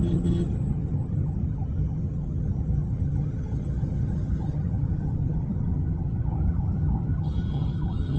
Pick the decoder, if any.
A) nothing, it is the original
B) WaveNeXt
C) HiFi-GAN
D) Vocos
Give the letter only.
C